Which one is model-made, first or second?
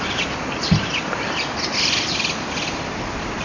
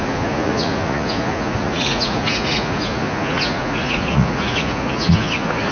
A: second